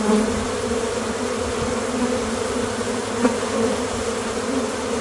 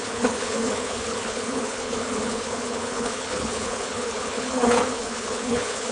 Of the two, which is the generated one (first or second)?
second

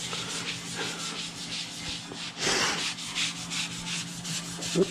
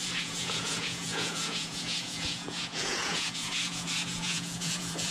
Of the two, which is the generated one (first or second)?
second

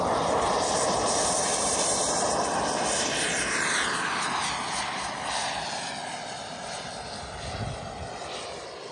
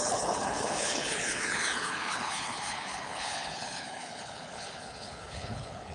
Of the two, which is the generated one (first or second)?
second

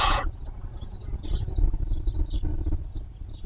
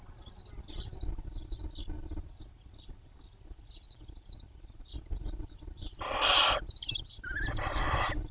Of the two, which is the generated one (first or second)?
first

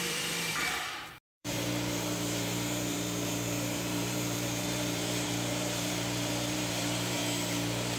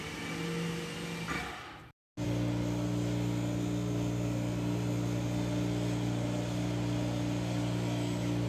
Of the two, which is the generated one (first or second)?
first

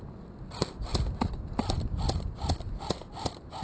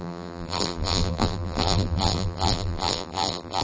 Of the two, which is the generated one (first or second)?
second